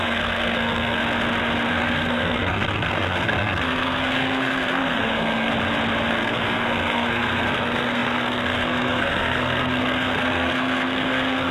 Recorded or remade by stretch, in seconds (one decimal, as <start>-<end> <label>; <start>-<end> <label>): 0.0-1.0 remade; 1.0-1.7 recorded; 1.7-5.5 remade; 5.5-6.1 recorded; 6.1-11.5 remade